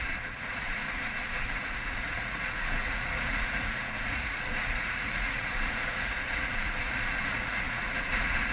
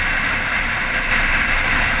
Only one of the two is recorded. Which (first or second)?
second